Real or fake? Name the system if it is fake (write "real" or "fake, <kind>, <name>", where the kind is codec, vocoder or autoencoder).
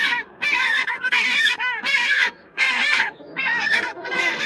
fake, codec, SNAC